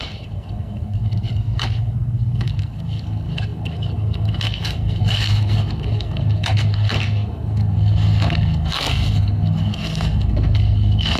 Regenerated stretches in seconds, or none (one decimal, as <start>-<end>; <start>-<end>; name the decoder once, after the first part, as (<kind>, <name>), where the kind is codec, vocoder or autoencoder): 0.0-11.2 (codec, SNAC)